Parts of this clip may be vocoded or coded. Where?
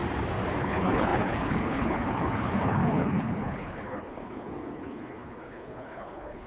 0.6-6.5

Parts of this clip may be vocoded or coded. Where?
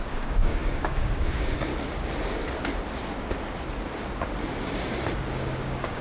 0.0-1.7; 5.3-6.0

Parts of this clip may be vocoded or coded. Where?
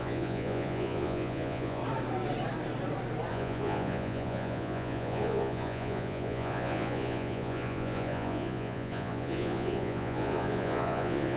0.0-1.8; 3.3-11.4